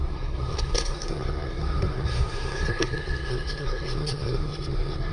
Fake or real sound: fake